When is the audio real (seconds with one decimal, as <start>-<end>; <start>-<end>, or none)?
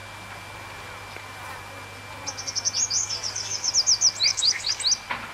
0.0-3.0; 3.7-4.3; 4.8-5.3